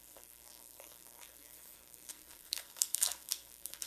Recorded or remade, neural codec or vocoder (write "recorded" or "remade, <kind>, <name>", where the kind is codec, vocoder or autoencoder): remade, codec, SNAC